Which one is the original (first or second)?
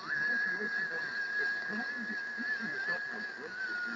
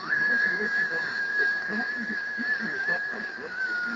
first